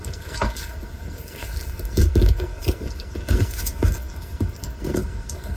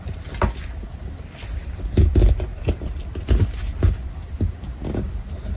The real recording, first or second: second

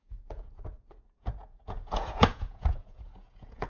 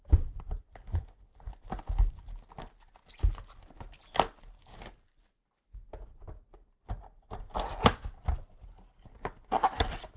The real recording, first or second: second